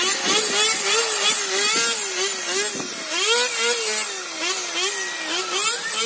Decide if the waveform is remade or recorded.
recorded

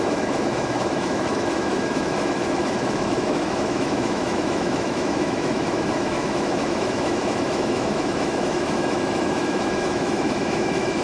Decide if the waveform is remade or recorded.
remade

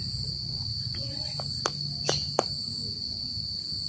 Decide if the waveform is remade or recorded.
recorded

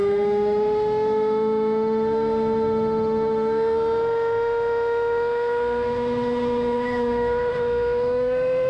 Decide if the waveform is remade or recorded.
remade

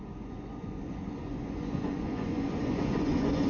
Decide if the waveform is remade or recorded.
remade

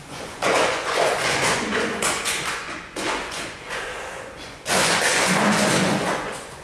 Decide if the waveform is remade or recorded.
remade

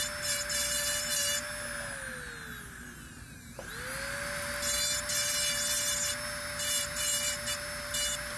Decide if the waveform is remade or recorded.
recorded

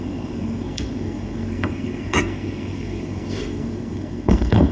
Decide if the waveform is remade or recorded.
remade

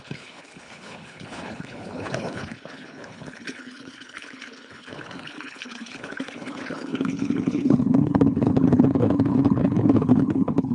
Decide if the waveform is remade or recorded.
remade